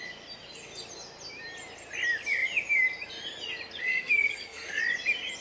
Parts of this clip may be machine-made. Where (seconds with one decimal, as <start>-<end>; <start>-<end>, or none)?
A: 3.8-4.8

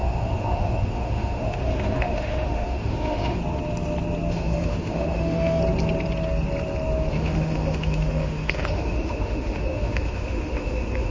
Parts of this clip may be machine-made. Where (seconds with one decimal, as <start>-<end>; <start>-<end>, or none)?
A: 0.0-3.4; 4.3-5.6; 7.1-11.1

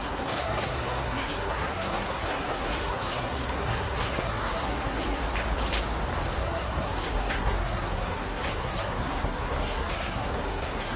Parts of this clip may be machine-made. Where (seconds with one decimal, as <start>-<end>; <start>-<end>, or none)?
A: 0.0-5.2; 6.4-11.0